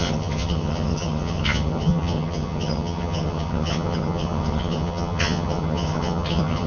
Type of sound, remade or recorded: remade